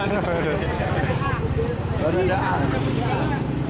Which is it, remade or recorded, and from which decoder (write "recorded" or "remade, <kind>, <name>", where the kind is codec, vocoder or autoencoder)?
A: recorded